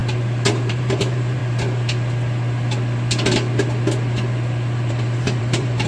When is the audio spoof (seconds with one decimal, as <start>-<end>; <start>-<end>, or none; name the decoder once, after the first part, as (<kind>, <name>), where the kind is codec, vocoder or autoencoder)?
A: 0.5-1.4 (vocoder, BigVGAN v2); 4.9-5.9